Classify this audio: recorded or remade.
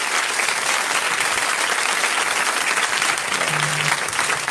recorded